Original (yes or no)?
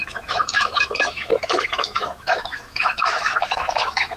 no